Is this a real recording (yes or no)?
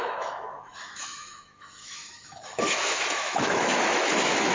no